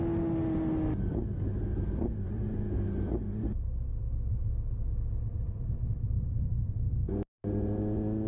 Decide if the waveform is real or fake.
real